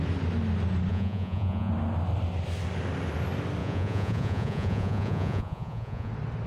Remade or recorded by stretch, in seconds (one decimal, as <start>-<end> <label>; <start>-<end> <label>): 0.0-0.9 recorded; 0.9-1.7 remade; 1.7-3.6 recorded; 3.6-6.1 remade; 6.1-6.5 recorded